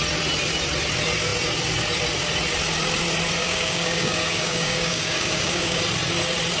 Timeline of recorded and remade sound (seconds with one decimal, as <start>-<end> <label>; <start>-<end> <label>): 0.0-3.4 recorded; 3.4-5.8 remade; 5.8-6.6 recorded